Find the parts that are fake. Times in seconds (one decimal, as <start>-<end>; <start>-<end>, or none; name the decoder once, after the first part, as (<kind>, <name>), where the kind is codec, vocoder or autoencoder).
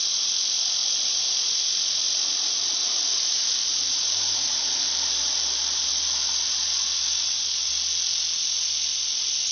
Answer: 0.8-1.7 (vocoder, BigVGAN v2); 2.8-7.7